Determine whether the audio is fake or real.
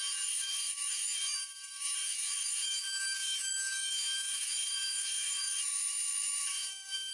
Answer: fake